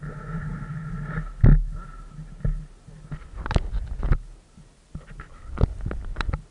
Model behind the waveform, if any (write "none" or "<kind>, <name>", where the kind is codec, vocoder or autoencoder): none